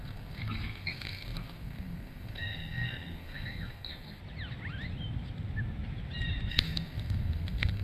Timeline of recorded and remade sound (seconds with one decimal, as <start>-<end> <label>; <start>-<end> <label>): 0.0-4.2 remade; 4.2-6.5 recorded; 6.5-7.8 remade